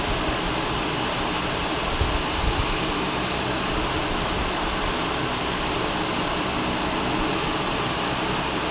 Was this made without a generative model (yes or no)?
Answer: yes